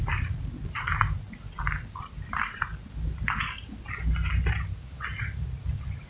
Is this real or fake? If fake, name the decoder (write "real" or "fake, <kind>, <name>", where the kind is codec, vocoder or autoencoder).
real